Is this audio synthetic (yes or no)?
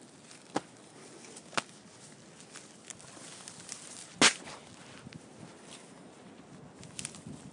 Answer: no